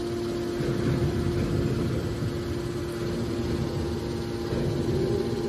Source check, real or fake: real